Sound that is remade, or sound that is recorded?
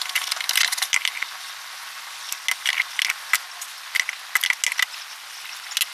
recorded